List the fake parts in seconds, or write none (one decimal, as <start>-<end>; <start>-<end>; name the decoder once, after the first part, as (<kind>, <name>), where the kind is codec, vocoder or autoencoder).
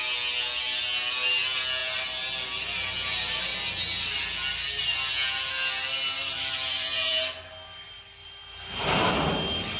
6.2-7.1 (vocoder, BigVGAN v2); 8.2-9.1